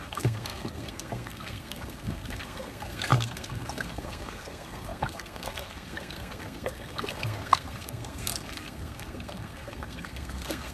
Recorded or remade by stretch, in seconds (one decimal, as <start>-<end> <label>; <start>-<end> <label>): 0.0-10.7 remade